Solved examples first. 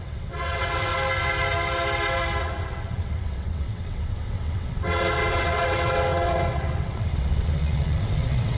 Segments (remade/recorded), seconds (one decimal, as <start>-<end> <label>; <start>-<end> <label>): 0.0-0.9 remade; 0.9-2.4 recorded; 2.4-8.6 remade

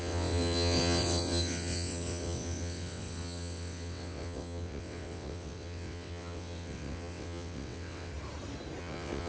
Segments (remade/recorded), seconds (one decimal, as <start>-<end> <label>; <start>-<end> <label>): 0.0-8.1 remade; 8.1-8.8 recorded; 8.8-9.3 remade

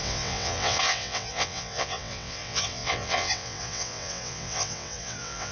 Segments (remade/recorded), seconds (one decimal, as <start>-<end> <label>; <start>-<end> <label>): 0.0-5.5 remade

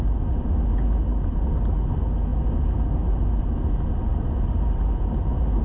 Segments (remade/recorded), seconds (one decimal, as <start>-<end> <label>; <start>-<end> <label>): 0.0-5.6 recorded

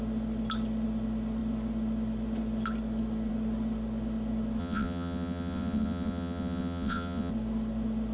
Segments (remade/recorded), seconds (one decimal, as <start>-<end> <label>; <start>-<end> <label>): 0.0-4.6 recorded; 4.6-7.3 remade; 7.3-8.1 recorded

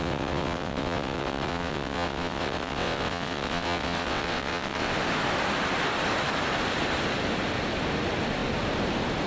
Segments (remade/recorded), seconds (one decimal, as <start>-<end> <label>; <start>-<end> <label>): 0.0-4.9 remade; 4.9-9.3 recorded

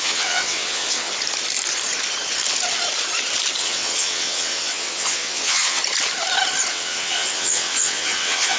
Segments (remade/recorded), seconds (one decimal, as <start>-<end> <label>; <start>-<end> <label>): 0.0-1.1 remade; 1.1-3.6 recorded; 3.6-5.8 remade; 5.8-6.7 recorded; 6.7-8.6 remade